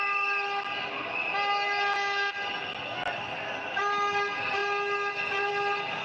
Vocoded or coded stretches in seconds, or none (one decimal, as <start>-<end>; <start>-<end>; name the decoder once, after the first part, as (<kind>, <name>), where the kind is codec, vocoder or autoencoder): none